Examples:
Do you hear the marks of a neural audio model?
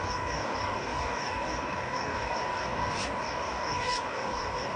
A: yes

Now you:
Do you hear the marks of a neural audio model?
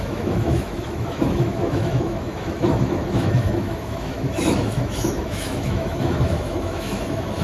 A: yes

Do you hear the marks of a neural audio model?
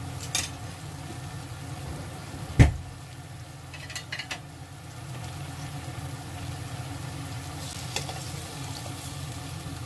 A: no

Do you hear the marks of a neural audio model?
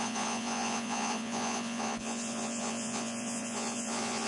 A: yes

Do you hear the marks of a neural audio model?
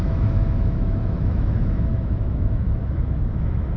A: yes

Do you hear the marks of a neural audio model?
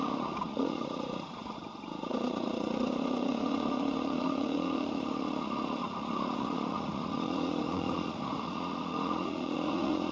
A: yes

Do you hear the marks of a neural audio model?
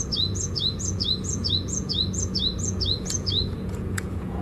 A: yes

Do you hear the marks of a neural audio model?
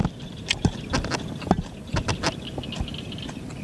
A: no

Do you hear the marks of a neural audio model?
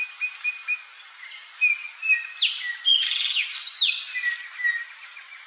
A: no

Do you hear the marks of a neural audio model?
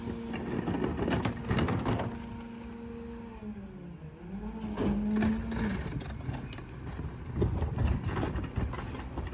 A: no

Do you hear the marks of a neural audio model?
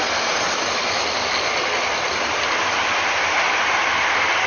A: no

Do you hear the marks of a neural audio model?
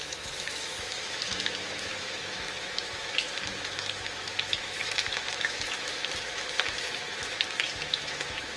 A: yes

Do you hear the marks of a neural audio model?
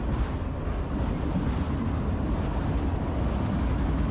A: no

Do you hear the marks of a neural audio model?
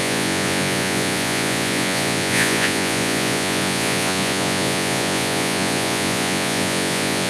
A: yes